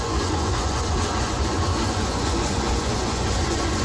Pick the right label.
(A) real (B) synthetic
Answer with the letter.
B